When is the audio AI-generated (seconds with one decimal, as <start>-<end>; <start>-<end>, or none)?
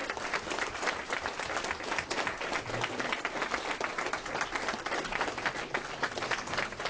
0.0-1.4